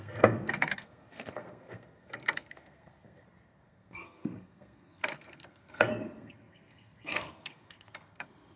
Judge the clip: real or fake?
fake